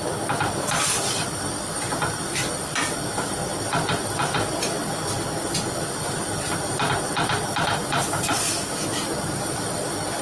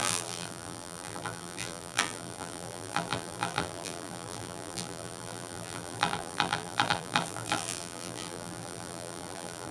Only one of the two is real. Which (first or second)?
first